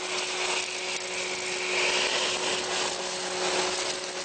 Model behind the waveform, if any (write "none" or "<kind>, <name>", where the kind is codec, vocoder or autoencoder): none